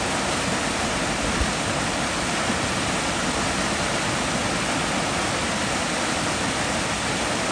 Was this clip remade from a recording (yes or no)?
no